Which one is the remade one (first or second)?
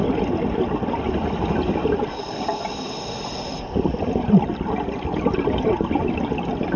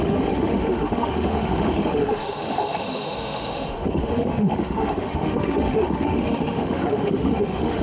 second